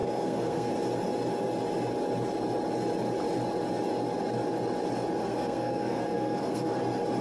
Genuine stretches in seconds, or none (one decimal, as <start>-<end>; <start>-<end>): 0.7-5.2; 6.8-7.2